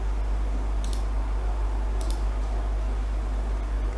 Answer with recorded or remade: recorded